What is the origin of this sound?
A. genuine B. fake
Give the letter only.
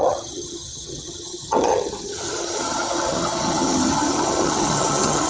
B